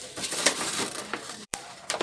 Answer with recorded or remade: remade